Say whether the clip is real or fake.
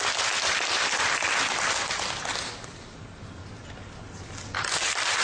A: real